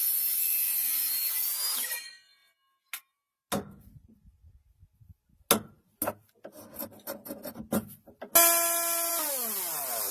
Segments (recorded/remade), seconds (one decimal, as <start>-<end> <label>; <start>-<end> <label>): 0.0-10.1 recorded